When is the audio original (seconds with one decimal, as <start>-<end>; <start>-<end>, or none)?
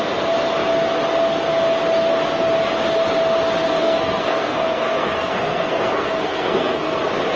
0.0-3.8; 7.0-7.4